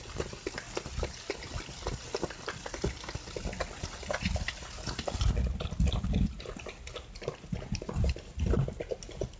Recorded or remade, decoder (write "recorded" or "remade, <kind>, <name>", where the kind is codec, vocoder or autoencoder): remade, vocoder, BigVGAN v2